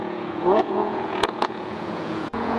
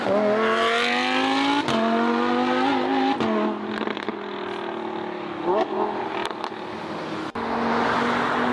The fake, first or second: first